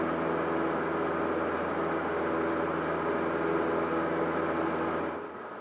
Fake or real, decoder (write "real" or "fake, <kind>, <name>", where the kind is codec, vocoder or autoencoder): real